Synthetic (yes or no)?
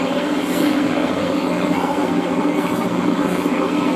yes